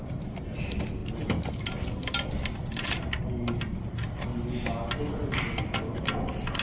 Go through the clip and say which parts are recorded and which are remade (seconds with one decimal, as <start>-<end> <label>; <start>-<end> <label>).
0.0-6.6 recorded